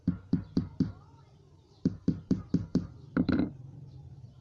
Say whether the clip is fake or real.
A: fake